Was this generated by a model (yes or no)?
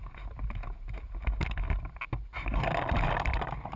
no